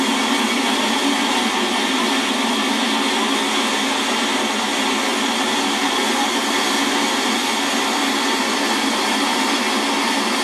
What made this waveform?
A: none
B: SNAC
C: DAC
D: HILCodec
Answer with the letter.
A